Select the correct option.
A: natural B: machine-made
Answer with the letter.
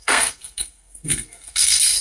B